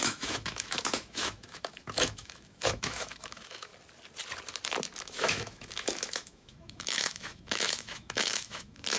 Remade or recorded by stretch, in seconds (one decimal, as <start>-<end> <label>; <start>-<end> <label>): 0.0-3.7 remade; 3.7-5.0 recorded; 5.0-9.0 remade